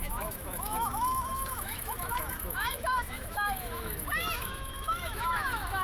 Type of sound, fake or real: fake